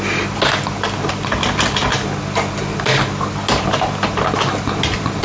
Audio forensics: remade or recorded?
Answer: recorded